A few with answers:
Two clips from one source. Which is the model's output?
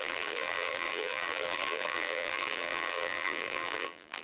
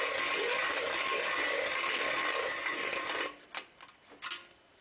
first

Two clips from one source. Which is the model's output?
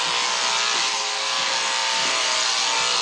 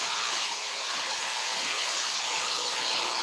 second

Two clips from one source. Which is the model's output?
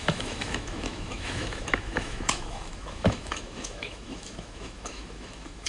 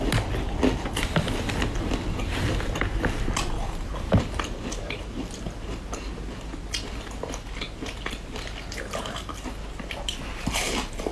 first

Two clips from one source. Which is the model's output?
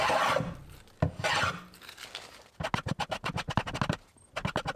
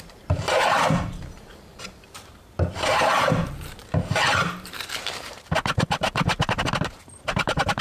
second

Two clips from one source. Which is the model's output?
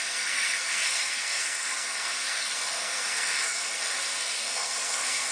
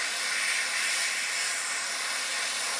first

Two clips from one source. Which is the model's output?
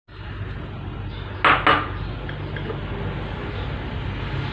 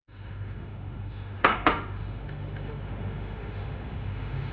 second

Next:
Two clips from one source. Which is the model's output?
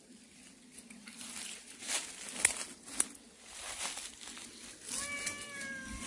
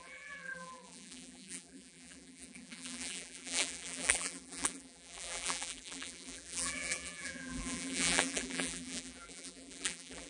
second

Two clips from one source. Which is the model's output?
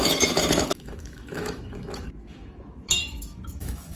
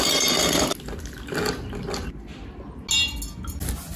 first